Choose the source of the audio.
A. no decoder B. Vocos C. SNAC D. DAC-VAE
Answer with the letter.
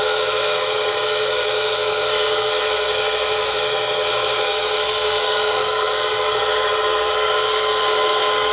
C